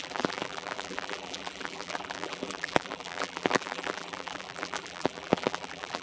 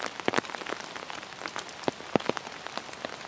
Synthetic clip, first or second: first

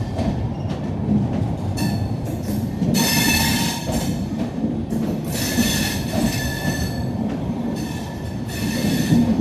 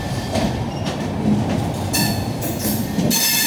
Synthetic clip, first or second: first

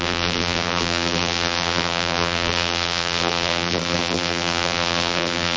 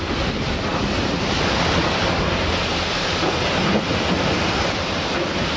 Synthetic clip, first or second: first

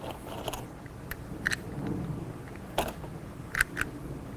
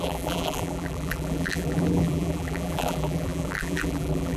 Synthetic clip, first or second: second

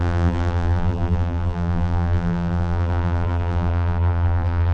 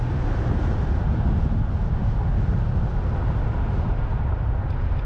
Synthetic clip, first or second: first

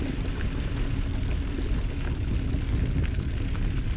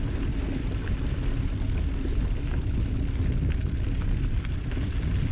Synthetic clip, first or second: second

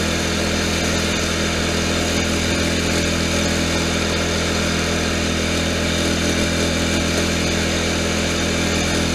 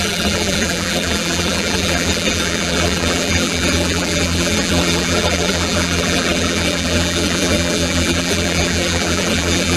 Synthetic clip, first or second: second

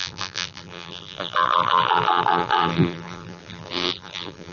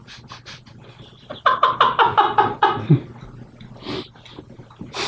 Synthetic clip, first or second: first